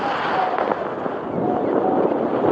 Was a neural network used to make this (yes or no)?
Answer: no